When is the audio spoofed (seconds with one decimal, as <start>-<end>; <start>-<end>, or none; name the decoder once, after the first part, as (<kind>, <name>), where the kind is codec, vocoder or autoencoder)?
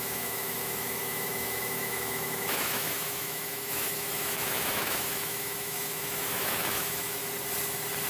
0.0-7.2 (autoencoder, DAC-VAE)